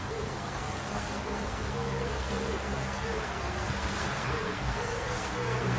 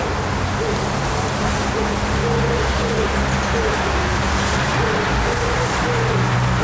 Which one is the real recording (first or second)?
second